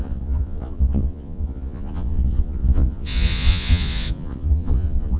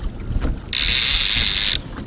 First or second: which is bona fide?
second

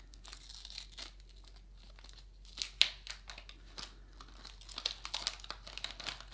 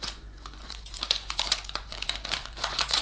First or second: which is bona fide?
first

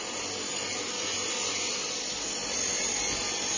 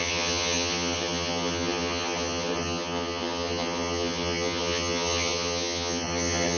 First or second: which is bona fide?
first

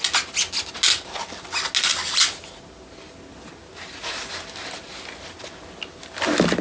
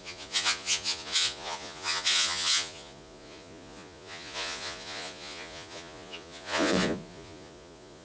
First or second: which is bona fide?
first